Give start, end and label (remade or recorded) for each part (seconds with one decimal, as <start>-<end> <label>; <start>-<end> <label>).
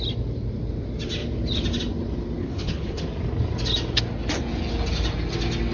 0.0-2.4 recorded; 2.4-3.0 remade; 3.0-5.7 recorded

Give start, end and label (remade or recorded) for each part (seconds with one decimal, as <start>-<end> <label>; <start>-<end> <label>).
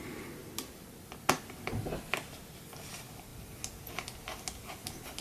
0.0-5.2 recorded